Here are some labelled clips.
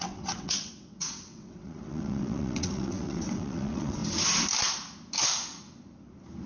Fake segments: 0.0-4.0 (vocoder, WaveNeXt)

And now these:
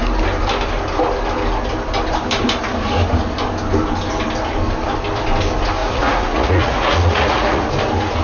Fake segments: 5.8-7.7 (vocoder, Vocos)